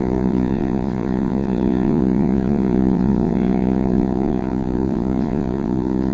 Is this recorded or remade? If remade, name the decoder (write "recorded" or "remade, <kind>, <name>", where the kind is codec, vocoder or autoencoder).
remade, vocoder, Vocos